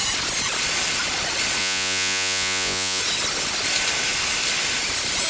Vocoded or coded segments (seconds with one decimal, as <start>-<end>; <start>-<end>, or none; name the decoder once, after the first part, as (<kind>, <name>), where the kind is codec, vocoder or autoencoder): 1.6-3.0 (vocoder, Vocos)